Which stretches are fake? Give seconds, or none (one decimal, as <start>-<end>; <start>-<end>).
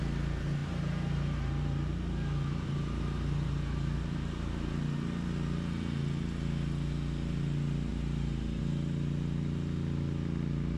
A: 0.6-4.7; 7.9-8.6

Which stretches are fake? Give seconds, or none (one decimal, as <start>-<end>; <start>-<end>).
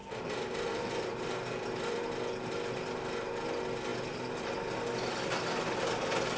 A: 0.0-1.3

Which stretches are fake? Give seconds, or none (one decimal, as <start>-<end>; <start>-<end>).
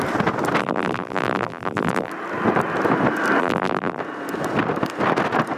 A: 0.6-2.1; 3.4-4.0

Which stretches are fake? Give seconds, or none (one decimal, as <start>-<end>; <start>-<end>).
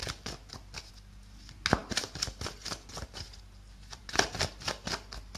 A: none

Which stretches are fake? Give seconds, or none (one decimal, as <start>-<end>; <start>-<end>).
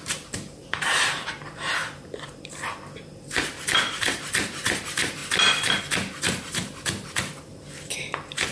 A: 0.0-5.2; 5.8-8.5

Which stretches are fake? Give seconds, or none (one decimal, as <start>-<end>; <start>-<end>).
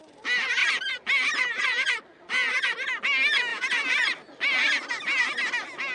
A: 0.6-1.6; 3.5-4.7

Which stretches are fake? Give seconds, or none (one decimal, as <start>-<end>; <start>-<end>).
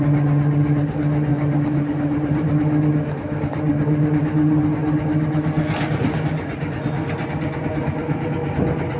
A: 1.3-2.5; 3.7-4.2